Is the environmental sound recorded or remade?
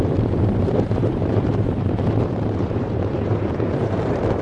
remade